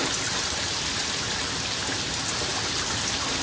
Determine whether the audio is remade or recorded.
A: recorded